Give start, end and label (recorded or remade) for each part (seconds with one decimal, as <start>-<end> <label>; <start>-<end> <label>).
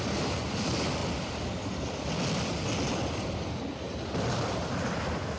0.0-1.0 remade; 1.0-4.2 recorded; 4.2-5.4 remade